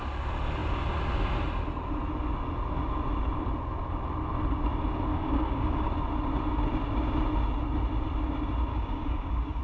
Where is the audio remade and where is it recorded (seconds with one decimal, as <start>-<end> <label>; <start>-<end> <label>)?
0.0-5.1 recorded; 5.1-5.9 remade; 5.9-8.7 recorded; 8.7-9.6 remade